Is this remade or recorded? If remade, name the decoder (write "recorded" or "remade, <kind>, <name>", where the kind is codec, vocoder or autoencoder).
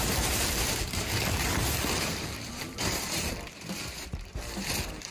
remade, vocoder, BigVGAN v2